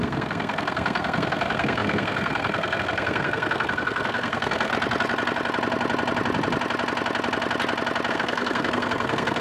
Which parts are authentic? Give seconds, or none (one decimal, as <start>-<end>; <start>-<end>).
4.7-8.1